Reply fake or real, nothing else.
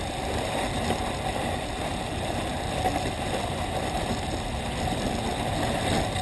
real